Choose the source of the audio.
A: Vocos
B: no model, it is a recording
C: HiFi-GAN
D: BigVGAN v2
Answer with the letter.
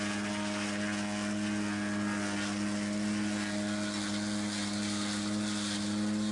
B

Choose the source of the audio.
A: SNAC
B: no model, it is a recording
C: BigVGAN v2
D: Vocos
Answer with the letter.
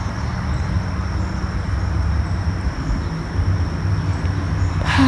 B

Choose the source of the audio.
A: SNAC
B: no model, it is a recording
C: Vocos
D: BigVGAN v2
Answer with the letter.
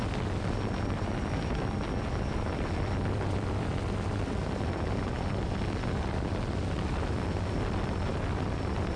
B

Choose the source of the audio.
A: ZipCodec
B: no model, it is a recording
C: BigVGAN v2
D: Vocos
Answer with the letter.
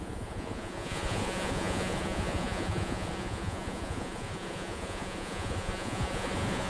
D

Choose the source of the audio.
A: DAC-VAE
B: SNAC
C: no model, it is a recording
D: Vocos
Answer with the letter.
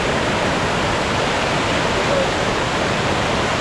C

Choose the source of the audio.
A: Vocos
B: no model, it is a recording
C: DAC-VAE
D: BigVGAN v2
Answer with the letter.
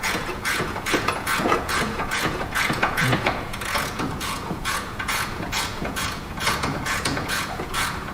A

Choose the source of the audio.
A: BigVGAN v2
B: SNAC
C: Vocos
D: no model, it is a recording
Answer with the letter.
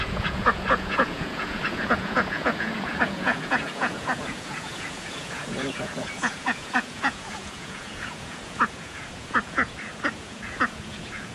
C